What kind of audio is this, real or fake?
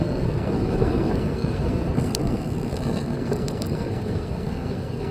fake